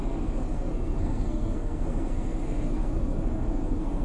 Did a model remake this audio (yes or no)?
yes